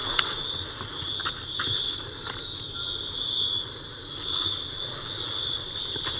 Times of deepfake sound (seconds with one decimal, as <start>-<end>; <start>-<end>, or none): none